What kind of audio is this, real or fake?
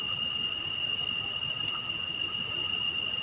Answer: real